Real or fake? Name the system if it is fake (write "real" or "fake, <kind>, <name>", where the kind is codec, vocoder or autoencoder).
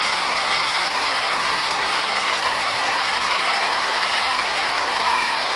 fake, codec, SNAC